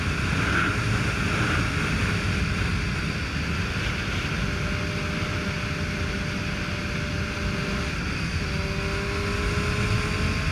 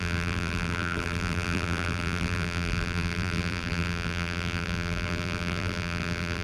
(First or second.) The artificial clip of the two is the second